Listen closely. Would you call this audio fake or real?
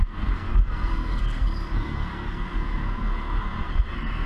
fake